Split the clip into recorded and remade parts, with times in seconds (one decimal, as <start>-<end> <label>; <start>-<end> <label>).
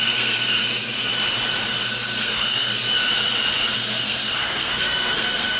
0.0-0.5 remade; 0.5-2.2 recorded; 2.2-2.7 remade; 2.7-4.0 recorded; 4.0-5.6 remade